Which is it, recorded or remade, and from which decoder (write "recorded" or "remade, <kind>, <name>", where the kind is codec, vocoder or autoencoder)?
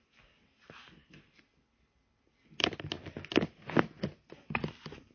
recorded